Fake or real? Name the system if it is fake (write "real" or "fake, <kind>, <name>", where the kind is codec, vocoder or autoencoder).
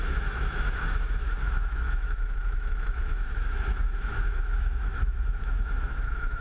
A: fake, autoencoder, DAC-VAE